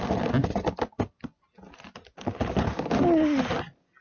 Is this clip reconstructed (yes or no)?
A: no